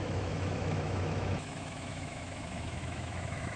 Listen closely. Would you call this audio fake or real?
fake